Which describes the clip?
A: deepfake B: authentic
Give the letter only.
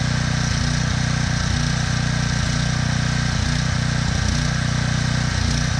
B